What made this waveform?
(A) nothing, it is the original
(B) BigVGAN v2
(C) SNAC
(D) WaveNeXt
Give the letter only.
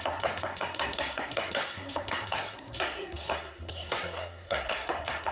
C